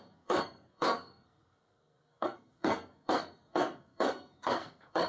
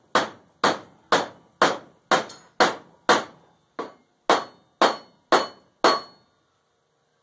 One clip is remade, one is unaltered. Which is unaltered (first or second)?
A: second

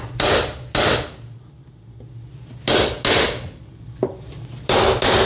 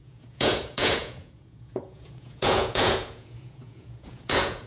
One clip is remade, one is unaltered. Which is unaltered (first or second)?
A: first